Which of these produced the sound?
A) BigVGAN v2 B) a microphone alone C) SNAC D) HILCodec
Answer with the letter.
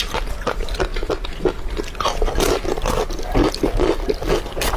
B